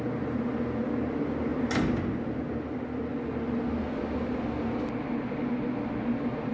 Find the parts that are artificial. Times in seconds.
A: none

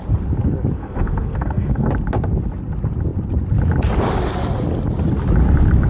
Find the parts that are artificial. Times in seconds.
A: 0.8-1.9 (codec, SNAC)

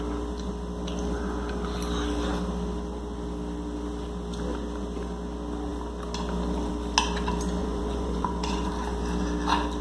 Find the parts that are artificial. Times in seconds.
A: 7.6-8.7 (vocoder, Vocos)